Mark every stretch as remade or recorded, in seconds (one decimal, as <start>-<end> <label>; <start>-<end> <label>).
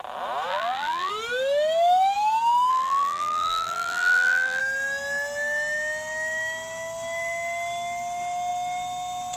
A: 0.0-0.5 recorded; 0.5-1.1 remade; 1.1-2.7 recorded; 2.7-4.6 remade; 4.6-9.4 recorded